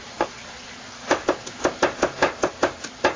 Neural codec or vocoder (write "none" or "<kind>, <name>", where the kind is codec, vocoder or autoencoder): none